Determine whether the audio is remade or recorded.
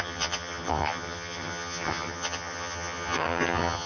remade